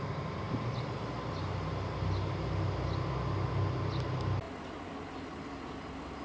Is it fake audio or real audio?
real